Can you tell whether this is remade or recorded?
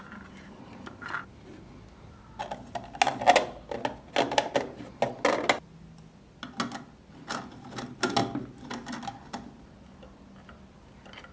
recorded